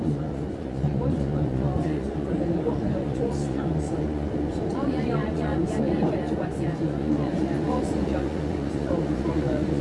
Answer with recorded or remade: remade